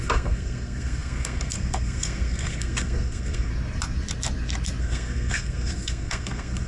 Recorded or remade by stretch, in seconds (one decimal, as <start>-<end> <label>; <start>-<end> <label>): 0.0-3.5 remade; 3.5-4.8 recorded; 4.8-6.7 remade